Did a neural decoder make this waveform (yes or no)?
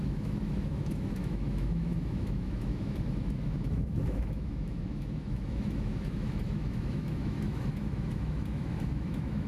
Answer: yes